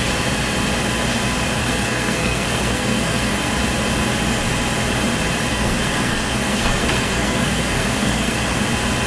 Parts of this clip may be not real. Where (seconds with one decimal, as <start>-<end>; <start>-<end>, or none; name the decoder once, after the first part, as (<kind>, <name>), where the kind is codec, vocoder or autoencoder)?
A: 1.6-3.5 (codec, SNAC); 5.5-8.6